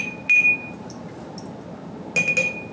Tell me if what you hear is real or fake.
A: real